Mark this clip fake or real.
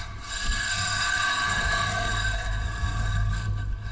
fake